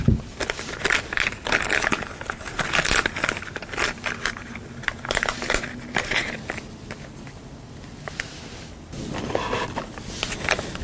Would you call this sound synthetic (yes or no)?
no